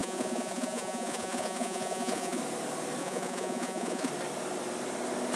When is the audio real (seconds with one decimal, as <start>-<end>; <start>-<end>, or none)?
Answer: 2.4-3.0; 4.1-5.4